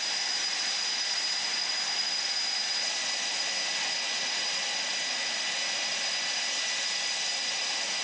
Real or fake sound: real